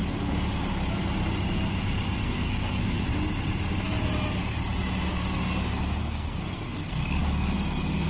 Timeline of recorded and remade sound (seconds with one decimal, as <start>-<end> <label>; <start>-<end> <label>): 0.0-2.2 recorded; 2.2-3.1 remade; 3.1-6.0 recorded; 6.0-8.1 remade